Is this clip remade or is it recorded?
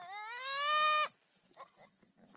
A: recorded